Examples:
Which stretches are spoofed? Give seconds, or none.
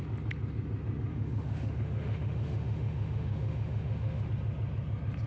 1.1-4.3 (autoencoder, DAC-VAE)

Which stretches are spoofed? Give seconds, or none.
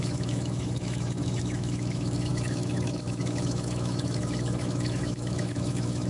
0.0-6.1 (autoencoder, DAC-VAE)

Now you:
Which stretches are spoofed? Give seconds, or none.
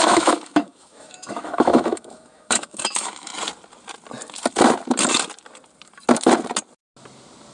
0.0-3.3 (autoencoder, DAC-VAE)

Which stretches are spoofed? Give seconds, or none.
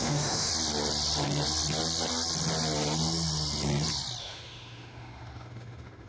0.0-0.5 (autoencoder, DAC-VAE); 4.2-6.1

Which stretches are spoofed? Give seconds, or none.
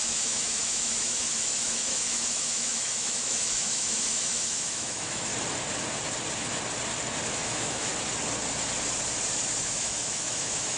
0.0-5.3 (autoencoder, DAC-VAE); 7.3-7.9; 9.6-10.8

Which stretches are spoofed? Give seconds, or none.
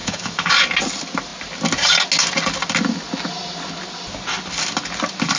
0.0-0.5 (autoencoder, DAC-VAE)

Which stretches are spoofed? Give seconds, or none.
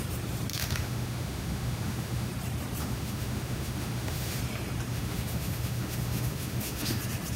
0.5-2.3 (autoencoder, DAC-VAE); 2.8-4.4; 4.9-7.0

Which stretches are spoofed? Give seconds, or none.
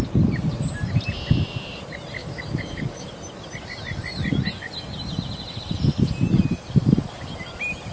2.2-3.1 (autoencoder, DAC-VAE)